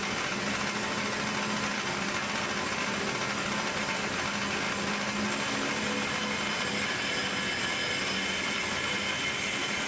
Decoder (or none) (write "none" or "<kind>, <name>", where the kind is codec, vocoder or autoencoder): none